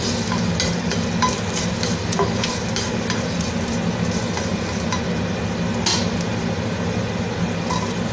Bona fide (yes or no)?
yes